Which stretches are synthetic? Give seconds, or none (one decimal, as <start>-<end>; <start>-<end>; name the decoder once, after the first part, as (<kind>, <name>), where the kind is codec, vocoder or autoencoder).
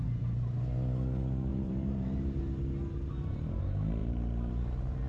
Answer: 1.5-2.4 (vocoder, BigVGAN v2); 4.0-4.5